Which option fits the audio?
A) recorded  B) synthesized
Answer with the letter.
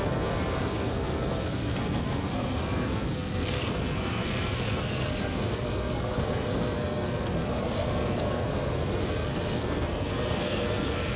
B